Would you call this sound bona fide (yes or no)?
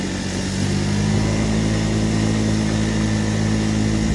yes